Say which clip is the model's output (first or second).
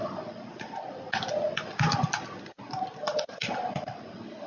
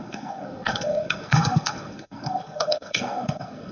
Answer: second